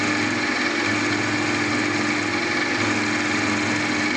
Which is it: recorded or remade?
recorded